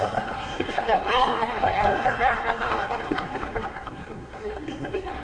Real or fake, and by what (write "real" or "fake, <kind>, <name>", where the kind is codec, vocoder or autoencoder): fake, codec, SNAC